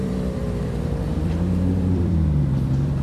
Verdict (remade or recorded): remade